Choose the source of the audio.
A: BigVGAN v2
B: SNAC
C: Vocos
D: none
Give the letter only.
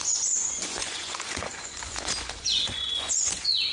C